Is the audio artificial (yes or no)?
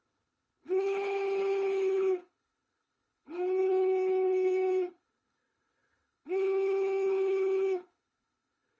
yes